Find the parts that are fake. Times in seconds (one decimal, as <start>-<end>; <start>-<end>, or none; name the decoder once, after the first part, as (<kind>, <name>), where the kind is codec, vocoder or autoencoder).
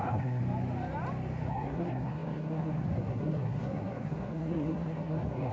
0.0-0.4 (codec, SNAC); 1.5-5.5